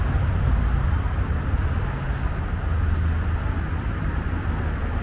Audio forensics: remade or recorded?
recorded